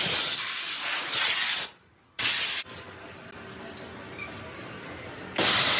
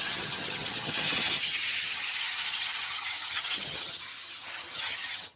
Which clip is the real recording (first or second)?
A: first